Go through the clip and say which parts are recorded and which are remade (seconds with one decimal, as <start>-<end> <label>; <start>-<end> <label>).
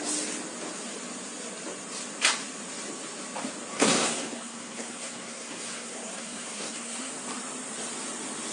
0.0-3.7 recorded; 3.7-7.1 remade; 7.1-8.5 recorded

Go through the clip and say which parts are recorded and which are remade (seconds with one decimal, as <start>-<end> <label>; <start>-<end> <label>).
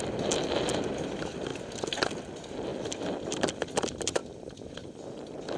0.0-5.6 recorded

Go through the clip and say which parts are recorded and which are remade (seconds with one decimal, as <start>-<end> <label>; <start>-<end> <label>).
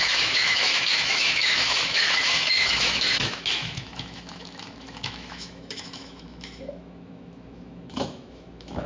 0.0-8.9 remade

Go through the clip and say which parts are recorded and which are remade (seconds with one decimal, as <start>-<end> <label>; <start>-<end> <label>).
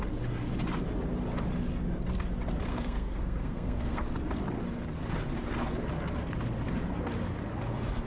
0.0-2.7 recorded; 2.7-4.1 remade; 4.1-8.1 recorded